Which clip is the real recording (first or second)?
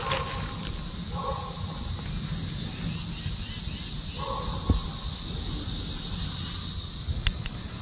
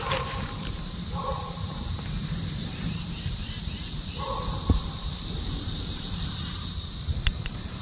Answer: first